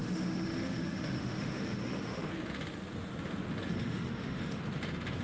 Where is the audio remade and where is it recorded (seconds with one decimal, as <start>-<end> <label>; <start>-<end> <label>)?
0.0-2.3 remade; 2.3-3.7 recorded; 3.7-4.6 remade; 4.6-5.2 recorded